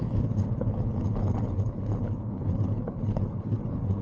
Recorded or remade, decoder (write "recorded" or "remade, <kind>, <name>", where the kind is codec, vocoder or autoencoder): remade, codec, HILCodec